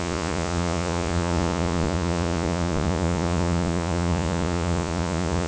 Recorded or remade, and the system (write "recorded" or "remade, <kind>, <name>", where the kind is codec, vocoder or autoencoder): remade, vocoder, Vocos